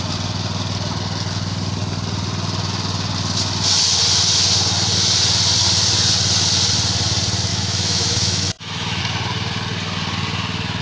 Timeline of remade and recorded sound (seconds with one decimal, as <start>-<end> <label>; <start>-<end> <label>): 0.0-7.5 recorded; 7.5-9.0 remade; 9.0-10.8 recorded